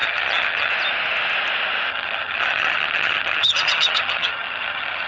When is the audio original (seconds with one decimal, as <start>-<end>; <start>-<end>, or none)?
0.7-1.9